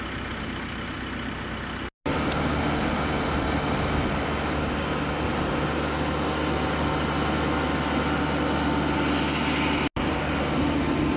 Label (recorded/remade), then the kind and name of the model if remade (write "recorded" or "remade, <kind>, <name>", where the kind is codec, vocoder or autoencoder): recorded